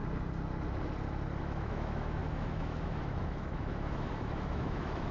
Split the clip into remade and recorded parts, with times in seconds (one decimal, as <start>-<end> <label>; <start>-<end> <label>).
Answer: 0.0-1.4 recorded; 1.4-5.1 remade